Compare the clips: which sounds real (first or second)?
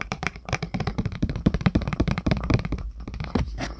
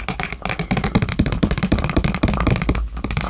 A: second